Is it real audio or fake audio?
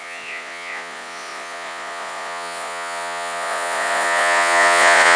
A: fake